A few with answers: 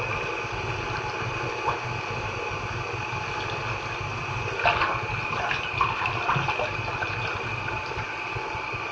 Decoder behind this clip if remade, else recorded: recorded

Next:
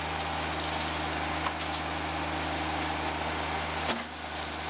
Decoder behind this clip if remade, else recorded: recorded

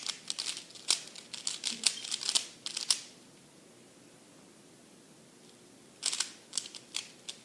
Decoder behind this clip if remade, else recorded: recorded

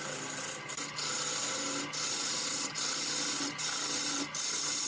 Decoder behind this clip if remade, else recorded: recorded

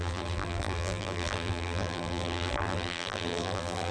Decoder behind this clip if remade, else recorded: remade, vocoder, BigVGAN v2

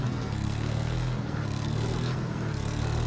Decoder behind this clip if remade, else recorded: remade, codec, SNAC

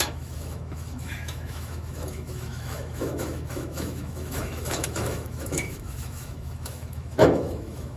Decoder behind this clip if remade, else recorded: remade, autoencoder, DAC-VAE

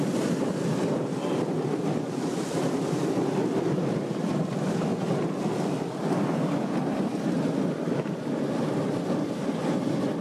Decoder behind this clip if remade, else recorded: recorded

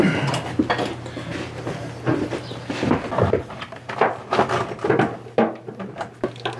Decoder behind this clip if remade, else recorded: recorded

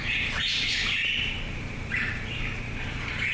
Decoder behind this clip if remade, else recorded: remade, vocoder, BigVGAN v2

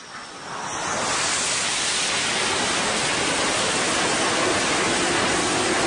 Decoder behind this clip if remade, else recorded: recorded